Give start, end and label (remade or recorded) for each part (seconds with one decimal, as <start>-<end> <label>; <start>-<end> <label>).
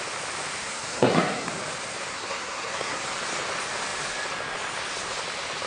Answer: 0.0-0.6 recorded; 0.6-1.5 remade; 1.5-2.1 recorded; 2.1-3.0 remade; 3.0-5.7 recorded